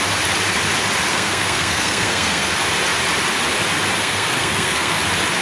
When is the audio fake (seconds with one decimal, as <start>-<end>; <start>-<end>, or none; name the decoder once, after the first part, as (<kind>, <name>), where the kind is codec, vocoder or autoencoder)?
1.1-2.5 (codec, SNAC); 4.0-5.0